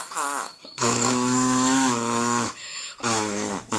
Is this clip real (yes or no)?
no